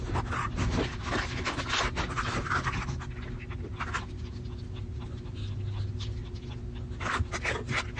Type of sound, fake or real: real